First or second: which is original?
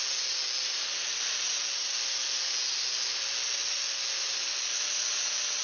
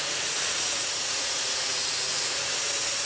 first